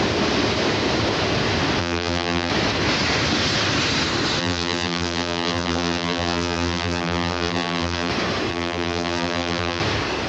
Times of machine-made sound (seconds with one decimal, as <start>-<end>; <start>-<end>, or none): 1.8-2.5; 4.4-8.1; 8.5-9.8